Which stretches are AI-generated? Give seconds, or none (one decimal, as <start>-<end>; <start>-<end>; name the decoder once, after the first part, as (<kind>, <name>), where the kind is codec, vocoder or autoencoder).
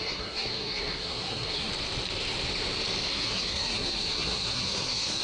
0.0-1.7 (codec, SNAC); 3.1-5.2